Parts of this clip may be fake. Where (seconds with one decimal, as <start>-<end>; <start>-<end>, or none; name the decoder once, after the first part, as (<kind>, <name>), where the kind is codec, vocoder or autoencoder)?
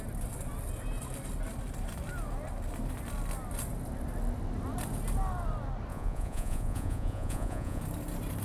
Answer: 5.9-7.8 (vocoder, Vocos)